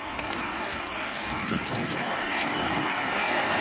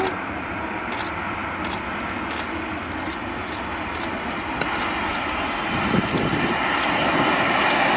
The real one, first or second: second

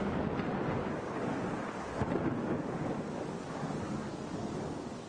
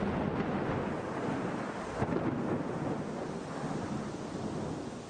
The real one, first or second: second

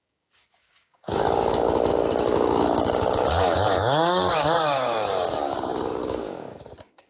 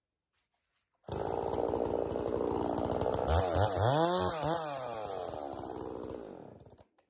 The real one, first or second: second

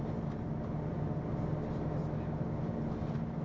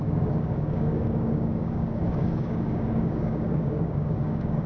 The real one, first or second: first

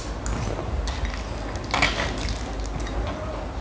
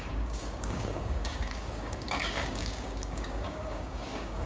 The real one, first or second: first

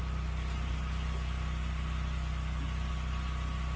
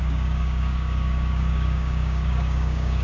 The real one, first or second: first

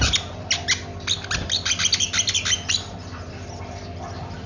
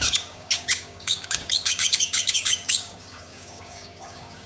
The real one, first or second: first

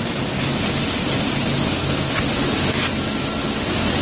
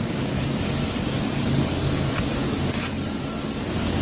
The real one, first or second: first